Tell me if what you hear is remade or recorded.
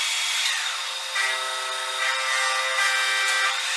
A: recorded